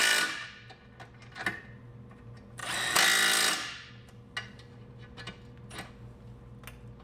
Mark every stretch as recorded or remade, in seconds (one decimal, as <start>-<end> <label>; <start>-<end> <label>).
0.0-7.0 recorded